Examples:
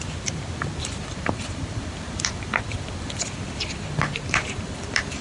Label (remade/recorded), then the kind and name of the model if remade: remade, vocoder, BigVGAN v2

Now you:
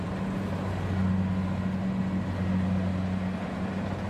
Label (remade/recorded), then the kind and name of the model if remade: recorded